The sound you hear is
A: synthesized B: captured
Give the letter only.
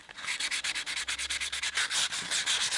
B